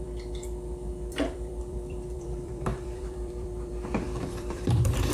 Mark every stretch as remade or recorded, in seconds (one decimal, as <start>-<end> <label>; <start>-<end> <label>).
0.0-5.1 remade